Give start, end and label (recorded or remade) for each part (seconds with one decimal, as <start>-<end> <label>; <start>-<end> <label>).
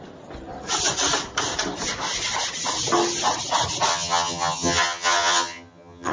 0.0-3.9 recorded; 3.9-6.1 remade